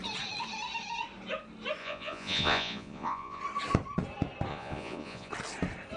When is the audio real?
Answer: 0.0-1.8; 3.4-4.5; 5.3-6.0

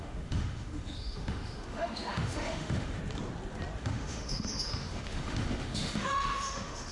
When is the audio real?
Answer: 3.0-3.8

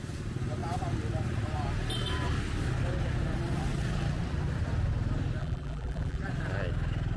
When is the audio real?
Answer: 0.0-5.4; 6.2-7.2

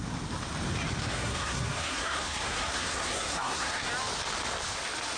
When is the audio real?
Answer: 0.0-1.0; 3.9-5.2

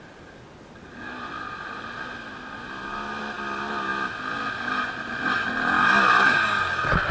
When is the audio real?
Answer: 0.0-7.1

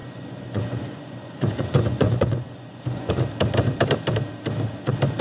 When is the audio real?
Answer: 3.1-5.2

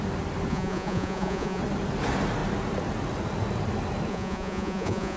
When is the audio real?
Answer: 0.0-0.5; 1.6-4.1

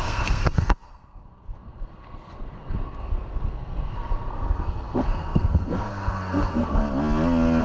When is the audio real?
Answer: 6.8-7.6